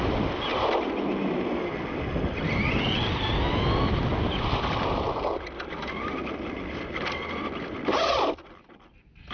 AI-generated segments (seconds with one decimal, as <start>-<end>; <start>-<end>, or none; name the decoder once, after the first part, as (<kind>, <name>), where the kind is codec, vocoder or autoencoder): none